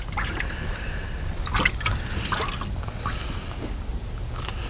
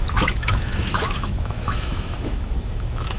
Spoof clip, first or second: second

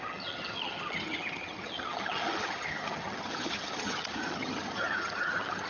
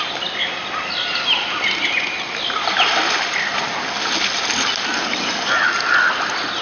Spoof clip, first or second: first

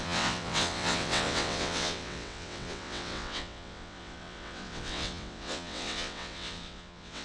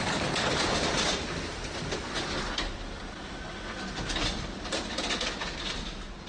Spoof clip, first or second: first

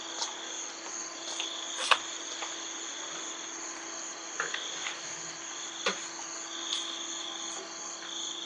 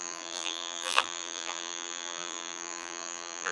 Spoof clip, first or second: second